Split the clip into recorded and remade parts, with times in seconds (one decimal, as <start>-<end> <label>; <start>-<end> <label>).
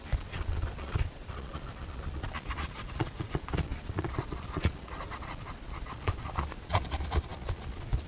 0.0-8.1 remade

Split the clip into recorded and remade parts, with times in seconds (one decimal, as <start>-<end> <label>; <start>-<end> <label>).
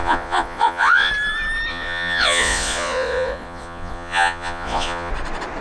0.0-1.1 remade; 1.1-1.7 recorded; 1.7-5.1 remade; 5.1-5.6 recorded